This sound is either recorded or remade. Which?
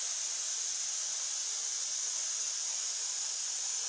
recorded